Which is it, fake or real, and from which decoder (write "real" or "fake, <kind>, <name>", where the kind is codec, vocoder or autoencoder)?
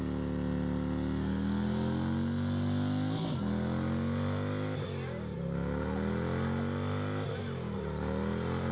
real